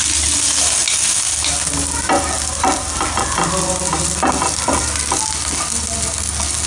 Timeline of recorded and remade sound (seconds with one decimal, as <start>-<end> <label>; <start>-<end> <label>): 0.0-6.7 recorded